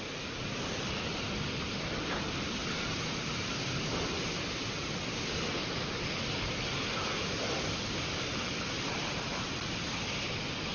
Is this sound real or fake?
real